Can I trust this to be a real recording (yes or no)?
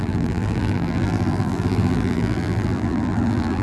no